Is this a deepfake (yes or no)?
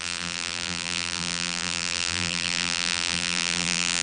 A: yes